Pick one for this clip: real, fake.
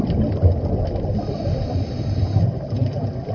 fake